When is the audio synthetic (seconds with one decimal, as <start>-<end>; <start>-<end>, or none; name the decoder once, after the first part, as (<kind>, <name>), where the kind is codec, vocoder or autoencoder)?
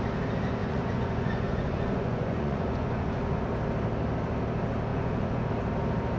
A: 0.6-3.4 (vocoder, Vocos); 4.9-5.5